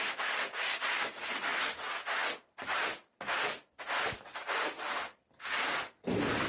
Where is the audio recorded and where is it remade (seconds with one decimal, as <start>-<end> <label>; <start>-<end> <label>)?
0.0-6.5 recorded